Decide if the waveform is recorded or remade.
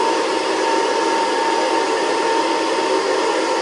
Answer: recorded